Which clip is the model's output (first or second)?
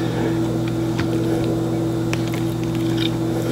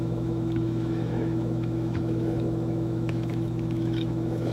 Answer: second